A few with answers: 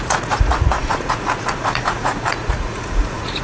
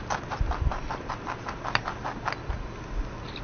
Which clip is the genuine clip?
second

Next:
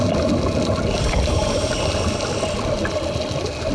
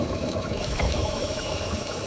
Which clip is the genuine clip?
first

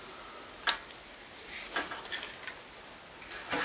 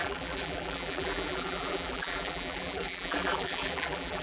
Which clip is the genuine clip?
first